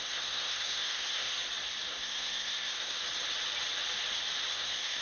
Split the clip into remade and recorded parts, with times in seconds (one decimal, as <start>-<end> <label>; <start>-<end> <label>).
0.0-1.3 remade; 1.3-1.9 recorded; 1.9-3.0 remade; 3.0-4.5 recorded; 4.5-5.0 remade